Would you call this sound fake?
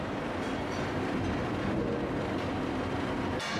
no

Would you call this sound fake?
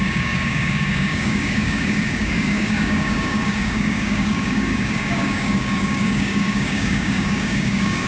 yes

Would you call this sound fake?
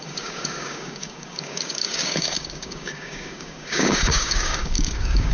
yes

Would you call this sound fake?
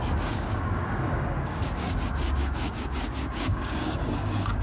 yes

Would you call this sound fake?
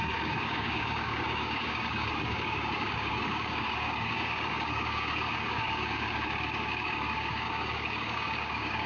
yes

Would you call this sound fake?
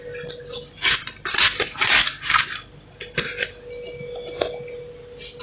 no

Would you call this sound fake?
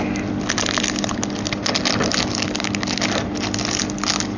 no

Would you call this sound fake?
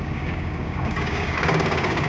yes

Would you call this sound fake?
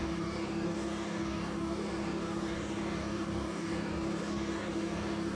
yes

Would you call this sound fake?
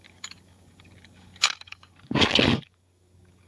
yes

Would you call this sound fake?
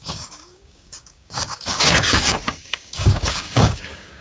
yes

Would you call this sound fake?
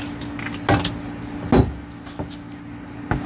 no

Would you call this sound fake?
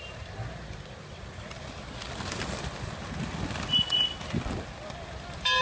no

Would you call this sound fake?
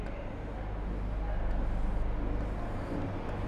no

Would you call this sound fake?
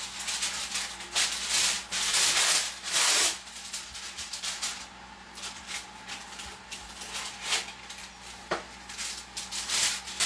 no